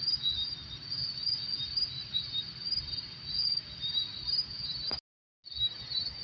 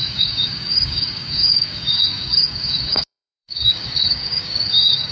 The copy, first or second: second